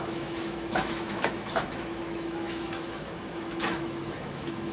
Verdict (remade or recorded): remade